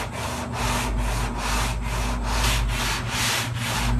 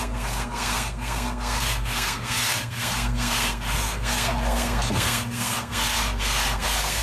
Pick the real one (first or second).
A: first